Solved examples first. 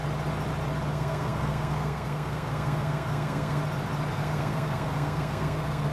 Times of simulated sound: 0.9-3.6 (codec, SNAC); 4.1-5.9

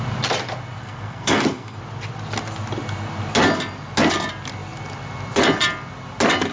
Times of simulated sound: 0.8-1.8 (codec, SNAC)

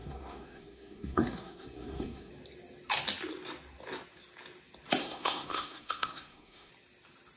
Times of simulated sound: 0.0-2.3 (codec, SNAC); 5.0-6.7

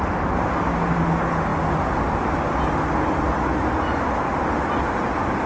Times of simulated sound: none